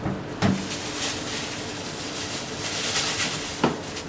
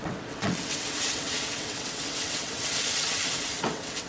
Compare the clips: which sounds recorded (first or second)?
first